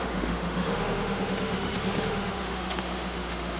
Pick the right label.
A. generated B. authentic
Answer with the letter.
A